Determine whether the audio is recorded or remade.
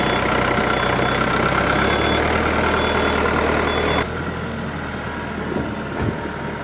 recorded